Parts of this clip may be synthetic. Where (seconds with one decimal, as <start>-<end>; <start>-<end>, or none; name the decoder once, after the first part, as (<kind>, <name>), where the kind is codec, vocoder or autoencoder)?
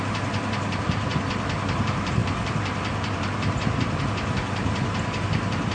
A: 0.0-1.1 (vocoder, BigVGAN v2); 1.7-5.7